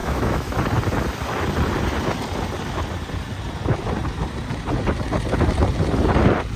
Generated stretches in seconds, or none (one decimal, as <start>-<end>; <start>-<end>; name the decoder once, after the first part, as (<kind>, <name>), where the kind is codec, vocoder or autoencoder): 0.0-0.6 (autoencoder, DAC-VAE)